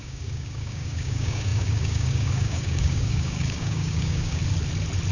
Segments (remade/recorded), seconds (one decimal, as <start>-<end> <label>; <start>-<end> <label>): 0.0-4.4 remade; 4.4-5.1 recorded